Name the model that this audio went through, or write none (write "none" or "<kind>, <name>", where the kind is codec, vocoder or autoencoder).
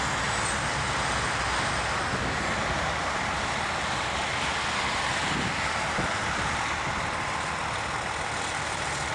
none